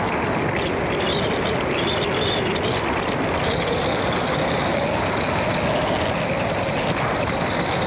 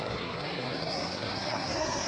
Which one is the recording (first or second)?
first